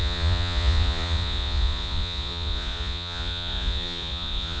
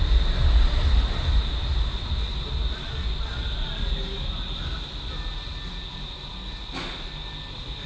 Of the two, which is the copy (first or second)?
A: first